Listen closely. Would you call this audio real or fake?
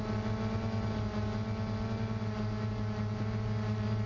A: real